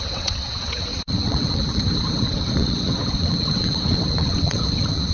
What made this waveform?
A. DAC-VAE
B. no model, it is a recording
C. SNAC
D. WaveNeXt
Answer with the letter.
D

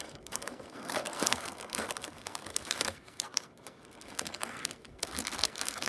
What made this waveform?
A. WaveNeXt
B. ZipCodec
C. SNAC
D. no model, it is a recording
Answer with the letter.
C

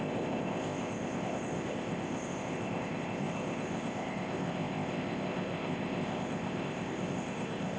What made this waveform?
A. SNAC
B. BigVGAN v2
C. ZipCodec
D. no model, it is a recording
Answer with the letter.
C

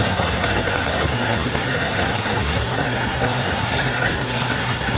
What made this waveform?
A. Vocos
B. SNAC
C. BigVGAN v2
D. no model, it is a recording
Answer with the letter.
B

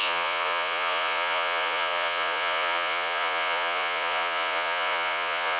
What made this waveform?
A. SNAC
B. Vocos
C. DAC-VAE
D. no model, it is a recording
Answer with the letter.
B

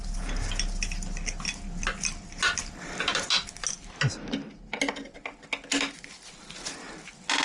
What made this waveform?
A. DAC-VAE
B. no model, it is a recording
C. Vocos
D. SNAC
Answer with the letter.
B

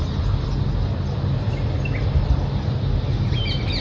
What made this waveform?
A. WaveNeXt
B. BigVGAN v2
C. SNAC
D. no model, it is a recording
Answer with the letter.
D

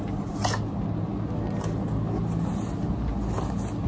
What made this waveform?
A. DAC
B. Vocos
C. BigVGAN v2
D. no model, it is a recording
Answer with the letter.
D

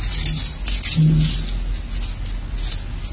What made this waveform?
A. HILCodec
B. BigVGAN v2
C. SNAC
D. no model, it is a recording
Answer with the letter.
D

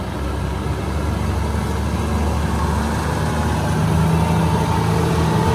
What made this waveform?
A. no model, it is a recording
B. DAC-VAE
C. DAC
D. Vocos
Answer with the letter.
A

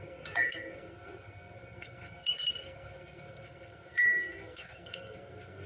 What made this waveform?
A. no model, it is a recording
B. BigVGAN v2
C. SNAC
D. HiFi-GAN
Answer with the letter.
C